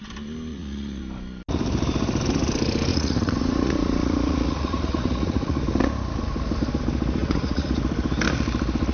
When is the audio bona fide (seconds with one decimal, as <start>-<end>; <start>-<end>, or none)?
0.0-0.5; 1.0-2.9; 5.6-7.2; 7.7-8.9